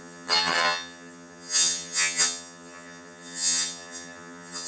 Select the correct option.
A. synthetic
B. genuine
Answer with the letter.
A